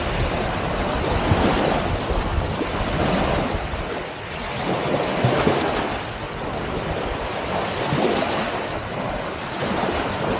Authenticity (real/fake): real